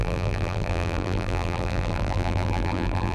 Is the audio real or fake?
fake